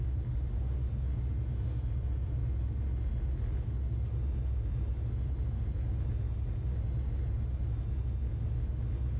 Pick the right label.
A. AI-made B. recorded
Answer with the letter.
B